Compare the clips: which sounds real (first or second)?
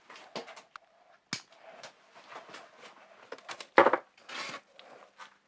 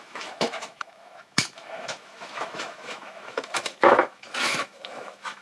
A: first